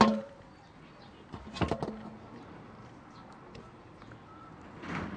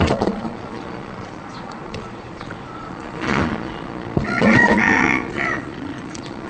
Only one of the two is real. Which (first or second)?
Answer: first